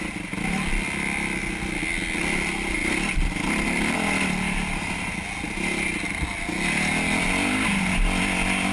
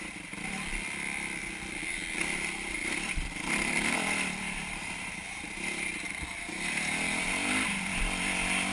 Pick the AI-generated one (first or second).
second